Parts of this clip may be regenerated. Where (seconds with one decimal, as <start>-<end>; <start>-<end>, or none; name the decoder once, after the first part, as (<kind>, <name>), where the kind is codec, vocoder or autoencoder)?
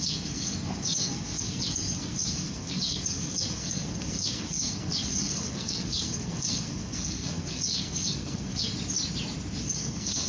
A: 0.0-8.7 (codec, SNAC); 9.6-10.3